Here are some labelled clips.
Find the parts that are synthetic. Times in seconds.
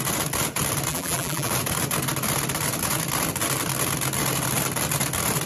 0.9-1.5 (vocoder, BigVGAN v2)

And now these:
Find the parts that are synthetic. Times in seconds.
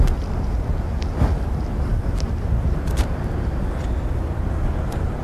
none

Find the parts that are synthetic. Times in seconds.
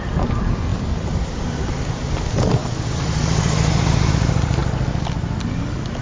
0.0-4.6 (vocoder, BigVGAN v2)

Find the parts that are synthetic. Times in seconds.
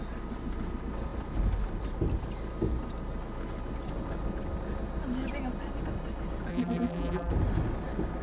6.5-7.3 (vocoder, BigVGAN v2)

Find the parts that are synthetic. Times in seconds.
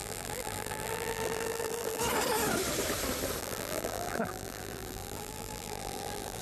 0.0-2.0 (vocoder, BigVGAN v2); 3.4-6.4